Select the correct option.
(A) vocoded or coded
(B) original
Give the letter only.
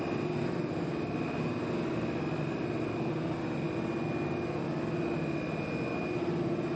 B